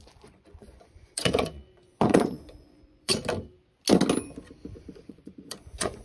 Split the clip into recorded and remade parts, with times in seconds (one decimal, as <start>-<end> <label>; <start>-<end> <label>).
0.0-3.1 remade; 3.1-5.0 recorded; 5.0-6.0 remade